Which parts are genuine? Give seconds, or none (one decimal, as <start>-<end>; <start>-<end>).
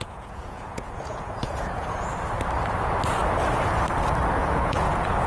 2.1-4.4